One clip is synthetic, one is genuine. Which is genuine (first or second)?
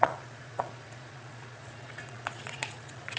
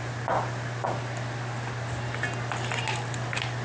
second